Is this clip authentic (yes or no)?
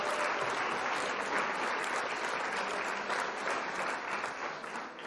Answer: yes